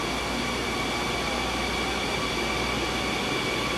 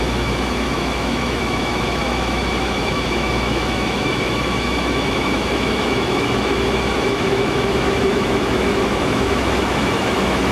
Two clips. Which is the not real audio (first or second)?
second